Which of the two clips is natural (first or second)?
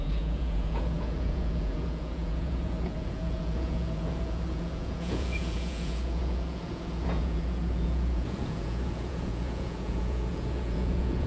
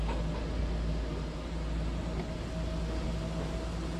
second